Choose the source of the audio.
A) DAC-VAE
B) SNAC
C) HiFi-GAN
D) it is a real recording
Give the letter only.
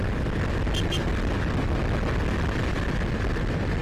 D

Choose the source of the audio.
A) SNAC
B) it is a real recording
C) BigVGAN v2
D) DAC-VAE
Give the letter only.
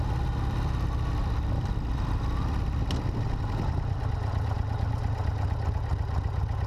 B